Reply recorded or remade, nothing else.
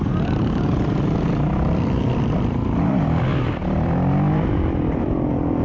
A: remade